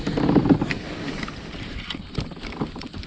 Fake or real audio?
real